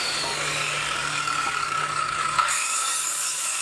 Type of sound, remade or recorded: remade